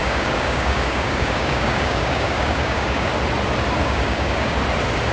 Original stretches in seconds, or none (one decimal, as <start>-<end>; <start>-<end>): 3.1-3.8; 4.6-5.1